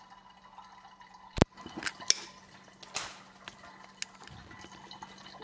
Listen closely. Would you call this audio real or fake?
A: real